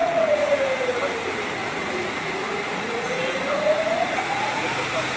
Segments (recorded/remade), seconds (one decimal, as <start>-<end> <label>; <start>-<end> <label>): 0.0-0.6 remade; 0.6-1.6 recorded; 1.6-4.7 remade; 4.7-5.2 recorded